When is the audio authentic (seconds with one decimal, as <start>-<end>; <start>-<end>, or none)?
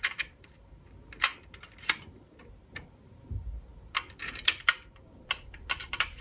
1.3-2.5; 3.7-4.2